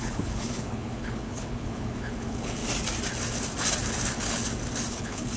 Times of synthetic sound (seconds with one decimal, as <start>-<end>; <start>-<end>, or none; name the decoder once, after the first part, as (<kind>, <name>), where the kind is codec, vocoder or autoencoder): 0.0-2.6 (codec, HILCodec); 4.9-5.4